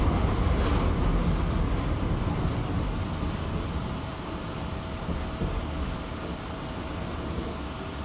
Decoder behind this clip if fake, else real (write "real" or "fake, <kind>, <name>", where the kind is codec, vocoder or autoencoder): real